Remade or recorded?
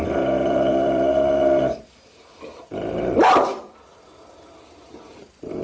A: remade